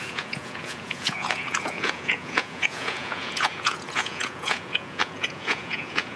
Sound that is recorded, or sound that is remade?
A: remade